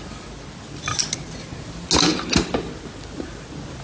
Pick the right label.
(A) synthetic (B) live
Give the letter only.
B